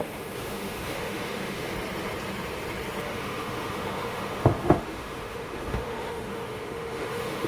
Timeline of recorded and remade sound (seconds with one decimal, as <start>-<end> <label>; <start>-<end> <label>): 0.0-1.7 remade; 1.7-3.0 recorded; 3.0-7.5 remade